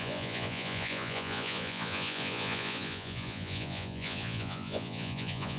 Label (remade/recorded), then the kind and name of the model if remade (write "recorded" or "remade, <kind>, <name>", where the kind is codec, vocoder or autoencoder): remade, vocoder, Vocos